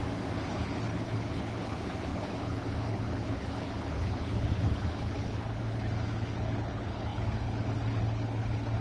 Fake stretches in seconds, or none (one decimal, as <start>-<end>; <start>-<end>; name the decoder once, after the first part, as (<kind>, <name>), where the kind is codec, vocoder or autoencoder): 0.5-8.8 (codec, HILCodec)